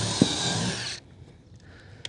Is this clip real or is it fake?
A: real